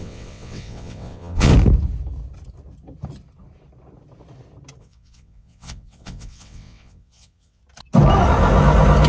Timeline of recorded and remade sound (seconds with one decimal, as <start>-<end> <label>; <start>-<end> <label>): 0.0-1.5 remade; 1.5-4.8 recorded; 4.8-7.6 remade; 7.6-9.1 recorded